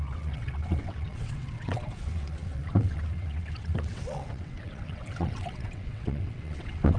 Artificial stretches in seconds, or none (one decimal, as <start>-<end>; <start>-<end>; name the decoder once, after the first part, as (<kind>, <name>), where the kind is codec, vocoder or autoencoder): 0.0-7.0 (vocoder, WaveNeXt)